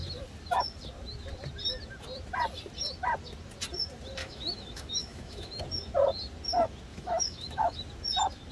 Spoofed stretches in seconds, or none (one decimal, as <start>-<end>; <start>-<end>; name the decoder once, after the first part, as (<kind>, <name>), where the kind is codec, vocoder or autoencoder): 4.2-5.6 (autoencoder, DAC-VAE); 6.9-7.8